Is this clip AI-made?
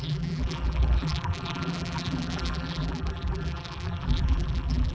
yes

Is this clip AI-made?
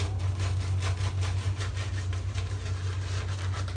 no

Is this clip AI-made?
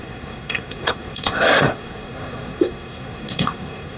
yes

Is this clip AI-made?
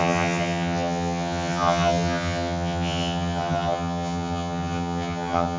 yes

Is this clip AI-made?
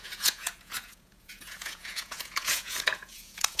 yes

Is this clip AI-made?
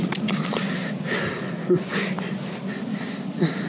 no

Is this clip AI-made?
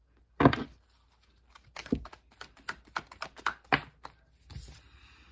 no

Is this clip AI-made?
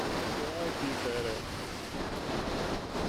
no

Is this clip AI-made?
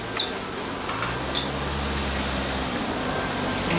no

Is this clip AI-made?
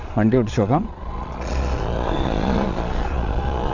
yes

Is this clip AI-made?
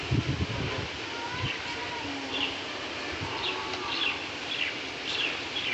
no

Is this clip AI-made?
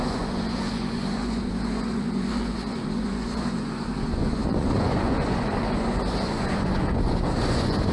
yes